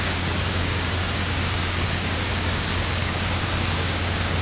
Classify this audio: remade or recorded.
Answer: remade